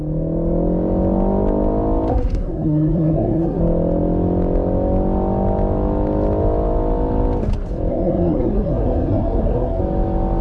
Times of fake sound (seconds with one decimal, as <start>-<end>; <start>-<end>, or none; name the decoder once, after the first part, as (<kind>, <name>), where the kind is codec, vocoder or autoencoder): 2.1-3.6 (codec, SNAC); 7.9-9.8